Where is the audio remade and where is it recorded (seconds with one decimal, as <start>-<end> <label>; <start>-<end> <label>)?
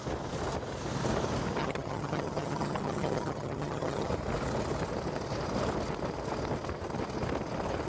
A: 0.0-1.6 recorded; 1.6-4.1 remade; 4.1-7.9 recorded